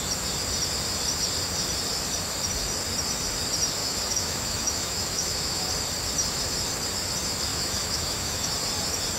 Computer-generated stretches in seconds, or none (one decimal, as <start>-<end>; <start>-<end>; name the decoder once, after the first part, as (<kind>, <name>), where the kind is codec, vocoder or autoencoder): 3.8-5.7 (autoencoder, DAC-VAE); 7.5-8.5